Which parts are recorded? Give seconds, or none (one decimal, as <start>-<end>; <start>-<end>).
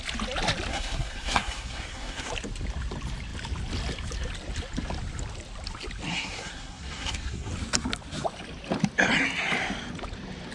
0.0-0.7; 2.3-6.1; 7.5-10.5